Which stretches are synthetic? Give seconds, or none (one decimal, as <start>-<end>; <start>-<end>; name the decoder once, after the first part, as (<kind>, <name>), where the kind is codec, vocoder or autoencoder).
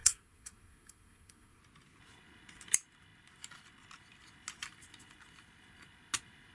0.0-1.6 (codec, SNAC)